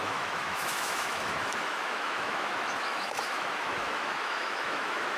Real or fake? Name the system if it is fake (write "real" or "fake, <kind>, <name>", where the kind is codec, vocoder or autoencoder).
fake, autoencoder, DAC-VAE